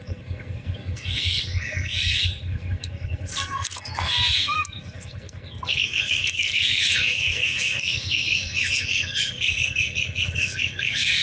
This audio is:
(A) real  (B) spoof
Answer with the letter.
B